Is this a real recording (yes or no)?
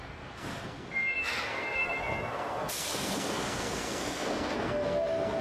no